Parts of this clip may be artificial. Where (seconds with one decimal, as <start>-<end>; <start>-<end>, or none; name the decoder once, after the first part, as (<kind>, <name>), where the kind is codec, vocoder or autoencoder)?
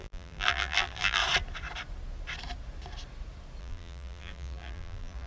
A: 0.0-1.2 (vocoder, BigVGAN v2); 3.6-5.3